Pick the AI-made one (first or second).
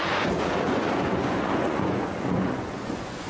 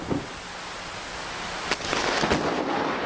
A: first